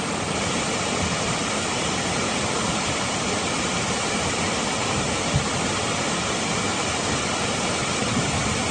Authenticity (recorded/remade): recorded